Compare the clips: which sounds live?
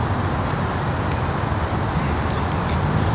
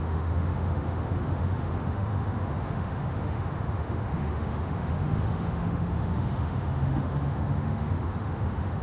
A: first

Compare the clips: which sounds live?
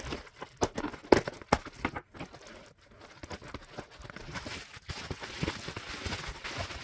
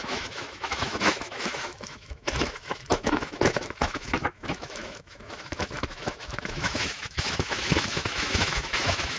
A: first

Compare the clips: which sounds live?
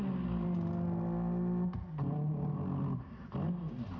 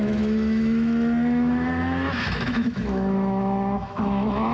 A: first